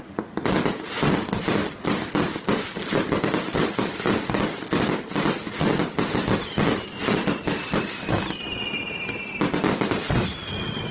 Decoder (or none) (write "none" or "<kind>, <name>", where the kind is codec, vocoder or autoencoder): none